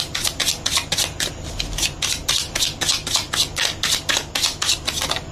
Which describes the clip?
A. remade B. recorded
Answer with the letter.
B